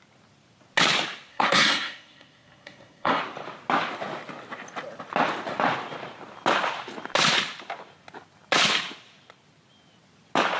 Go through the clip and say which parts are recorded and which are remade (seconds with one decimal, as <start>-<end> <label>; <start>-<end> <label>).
0.0-1.3 recorded; 1.3-3.2 remade; 3.2-10.6 recorded